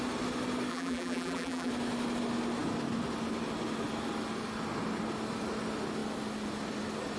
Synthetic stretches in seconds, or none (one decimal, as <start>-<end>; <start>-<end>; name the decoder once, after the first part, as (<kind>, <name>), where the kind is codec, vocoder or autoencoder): 0.7-1.7 (vocoder, BigVGAN v2)